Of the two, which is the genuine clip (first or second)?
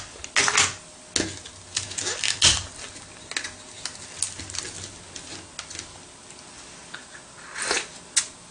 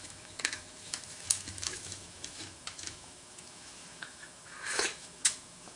first